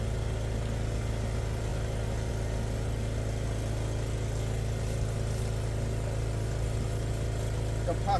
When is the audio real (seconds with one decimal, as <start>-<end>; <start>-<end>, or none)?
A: 0.0-8.2